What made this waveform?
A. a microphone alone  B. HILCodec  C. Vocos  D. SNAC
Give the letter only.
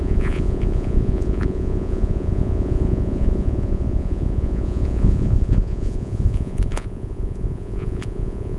C